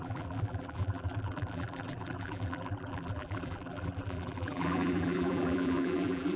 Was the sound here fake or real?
fake